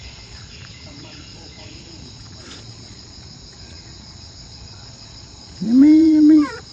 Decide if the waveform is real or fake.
fake